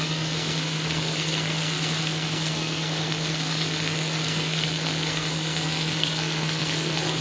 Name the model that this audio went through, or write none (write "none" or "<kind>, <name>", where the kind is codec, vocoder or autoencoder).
codec, SNAC